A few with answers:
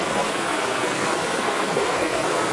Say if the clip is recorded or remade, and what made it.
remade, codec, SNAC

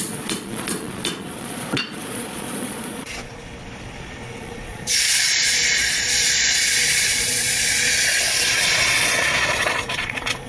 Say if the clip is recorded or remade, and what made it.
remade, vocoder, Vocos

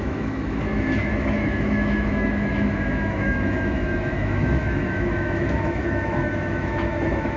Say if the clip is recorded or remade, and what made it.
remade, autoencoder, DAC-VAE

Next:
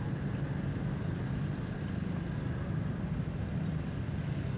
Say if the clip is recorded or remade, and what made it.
recorded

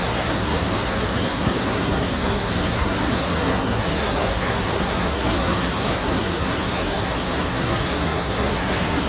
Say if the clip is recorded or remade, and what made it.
remade, codec, SNAC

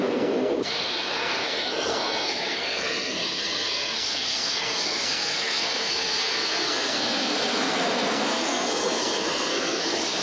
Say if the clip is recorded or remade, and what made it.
remade, codec, SNAC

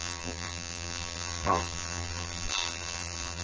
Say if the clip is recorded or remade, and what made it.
remade, vocoder, BigVGAN v2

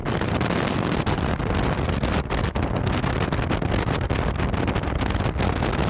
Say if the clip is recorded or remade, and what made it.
recorded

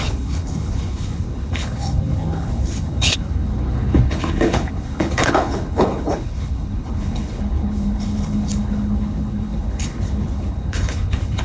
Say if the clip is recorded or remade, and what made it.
remade, codec, HILCodec